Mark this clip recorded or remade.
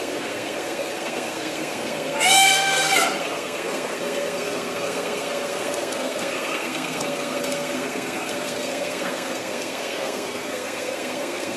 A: remade